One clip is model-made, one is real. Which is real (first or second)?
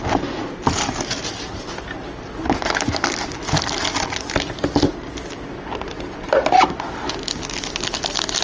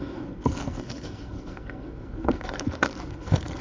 first